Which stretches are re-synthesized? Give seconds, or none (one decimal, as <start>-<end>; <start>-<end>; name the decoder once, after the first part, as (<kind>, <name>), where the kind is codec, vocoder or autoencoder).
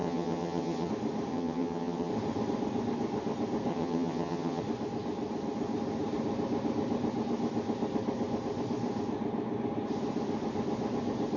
0.0-0.9 (vocoder, HiFi-GAN); 1.3-2.1; 3.7-4.6